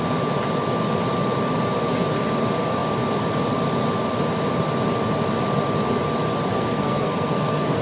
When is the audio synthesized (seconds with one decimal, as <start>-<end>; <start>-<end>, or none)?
6.5-7.8